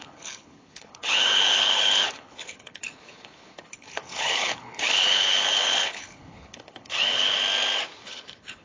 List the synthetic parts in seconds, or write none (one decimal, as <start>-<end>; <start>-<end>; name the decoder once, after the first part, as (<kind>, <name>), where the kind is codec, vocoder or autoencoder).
0.0-7.4 (codec, HILCodec); 8.0-8.6